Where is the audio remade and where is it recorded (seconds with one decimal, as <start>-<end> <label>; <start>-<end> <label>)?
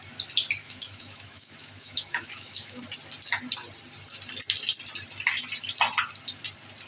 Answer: 0.0-0.6 recorded; 0.6-2.8 remade; 2.8-6.9 recorded